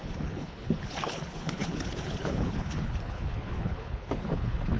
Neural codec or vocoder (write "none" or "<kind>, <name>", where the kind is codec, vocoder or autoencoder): codec, HILCodec